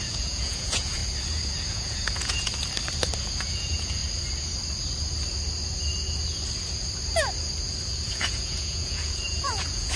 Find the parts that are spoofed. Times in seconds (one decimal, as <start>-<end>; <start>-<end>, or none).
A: 0.0-1.0; 1.7-2.5; 3.2-4.0; 8.1-10.0